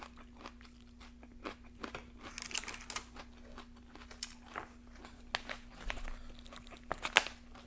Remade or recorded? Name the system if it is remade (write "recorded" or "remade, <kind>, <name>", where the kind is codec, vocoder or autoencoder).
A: recorded